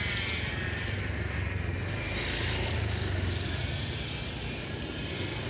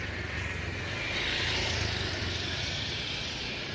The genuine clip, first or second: first